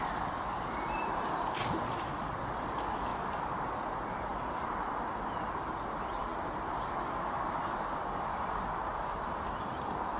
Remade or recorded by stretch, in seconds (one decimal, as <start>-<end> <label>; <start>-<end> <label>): 0.0-3.1 remade; 3.1-3.9 recorded; 3.9-10.2 remade